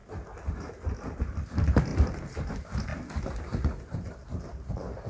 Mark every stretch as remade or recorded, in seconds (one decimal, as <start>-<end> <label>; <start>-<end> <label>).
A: 0.0-5.1 recorded